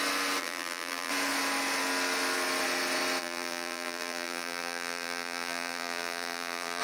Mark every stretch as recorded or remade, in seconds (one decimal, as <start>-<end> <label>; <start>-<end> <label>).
0.0-0.4 recorded; 0.4-1.1 remade; 1.1-3.2 recorded; 3.2-6.8 remade